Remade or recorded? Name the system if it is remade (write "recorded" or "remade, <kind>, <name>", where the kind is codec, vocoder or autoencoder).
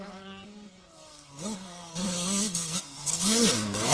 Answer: remade, codec, SNAC